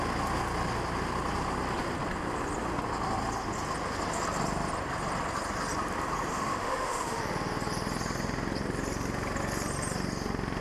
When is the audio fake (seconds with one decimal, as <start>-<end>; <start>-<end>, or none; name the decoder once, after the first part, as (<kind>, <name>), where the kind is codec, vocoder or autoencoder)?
6.3-7.2 (autoencoder, DAC-VAE)